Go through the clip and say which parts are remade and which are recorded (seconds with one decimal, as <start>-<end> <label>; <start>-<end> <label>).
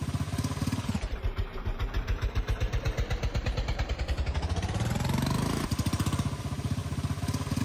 0.0-6.8 remade; 6.8-7.6 recorded